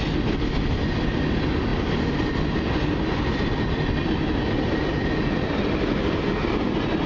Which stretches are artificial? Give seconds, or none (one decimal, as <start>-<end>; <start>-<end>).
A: none